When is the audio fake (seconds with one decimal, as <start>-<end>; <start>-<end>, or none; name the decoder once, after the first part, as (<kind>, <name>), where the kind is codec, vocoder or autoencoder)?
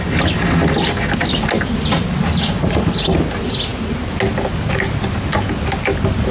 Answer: none